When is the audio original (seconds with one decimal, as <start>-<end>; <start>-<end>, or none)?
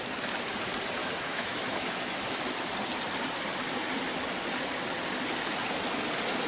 0.0-1.0; 2.4-6.5